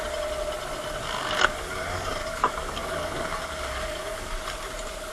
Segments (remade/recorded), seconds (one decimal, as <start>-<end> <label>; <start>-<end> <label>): 0.0-1.2 recorded; 1.2-4.3 remade; 4.3-5.1 recorded